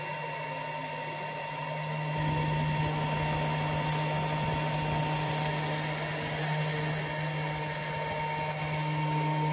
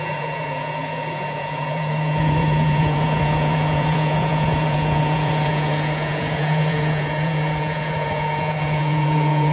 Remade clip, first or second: second